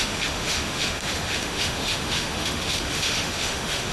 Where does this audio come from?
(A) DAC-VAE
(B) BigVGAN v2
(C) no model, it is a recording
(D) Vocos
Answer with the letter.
A